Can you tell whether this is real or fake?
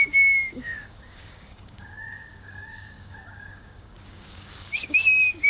fake